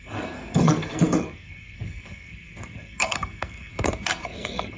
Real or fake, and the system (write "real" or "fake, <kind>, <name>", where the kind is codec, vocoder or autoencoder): fake, codec, SNAC